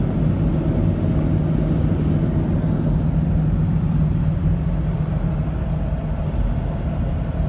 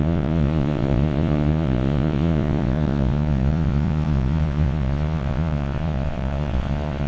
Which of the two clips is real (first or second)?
first